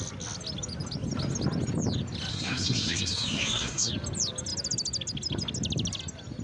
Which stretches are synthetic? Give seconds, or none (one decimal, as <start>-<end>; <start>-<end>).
2.3-3.9